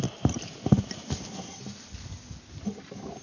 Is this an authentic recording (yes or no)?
yes